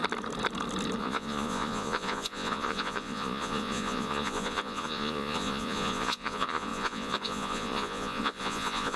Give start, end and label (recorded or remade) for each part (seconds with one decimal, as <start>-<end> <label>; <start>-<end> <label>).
0.0-1.0 recorded; 1.0-9.0 remade